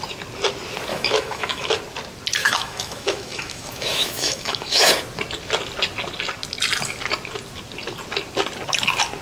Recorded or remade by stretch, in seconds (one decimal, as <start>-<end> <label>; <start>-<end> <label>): 0.0-0.9 recorded; 0.9-1.8 remade; 1.8-2.4 recorded; 2.4-4.9 remade; 4.9-9.2 recorded